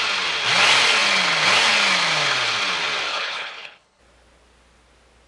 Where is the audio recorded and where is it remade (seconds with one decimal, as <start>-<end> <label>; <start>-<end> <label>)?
0.0-3.1 recorded; 3.1-4.0 remade; 4.0-5.3 recorded